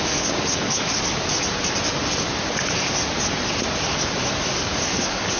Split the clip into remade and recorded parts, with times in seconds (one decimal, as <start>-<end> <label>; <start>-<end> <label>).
0.0-1.3 remade; 1.3-4.5 recorded; 4.5-5.4 remade